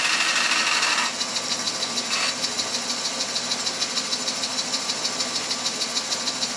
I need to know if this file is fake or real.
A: real